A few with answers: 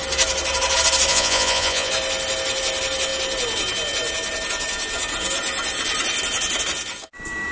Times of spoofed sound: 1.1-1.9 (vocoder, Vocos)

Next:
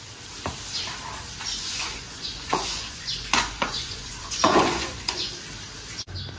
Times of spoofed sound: 1.5-5.3 (vocoder, Vocos)

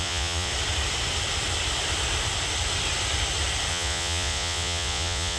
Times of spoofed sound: 0.0-0.5 (vocoder, Vocos); 3.7-5.4